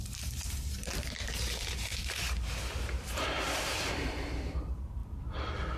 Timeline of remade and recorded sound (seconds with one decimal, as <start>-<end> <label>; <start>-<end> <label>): 0.0-5.0 remade; 5.0-5.8 recorded